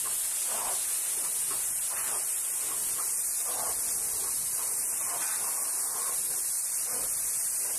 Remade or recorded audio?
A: recorded